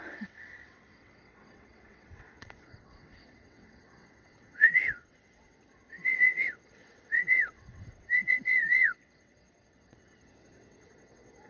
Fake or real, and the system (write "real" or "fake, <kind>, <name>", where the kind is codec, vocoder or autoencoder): fake, vocoder, WaveNeXt